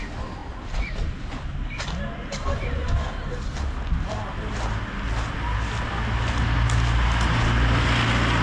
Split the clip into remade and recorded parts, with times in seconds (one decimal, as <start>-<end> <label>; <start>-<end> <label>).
0.0-8.4 recorded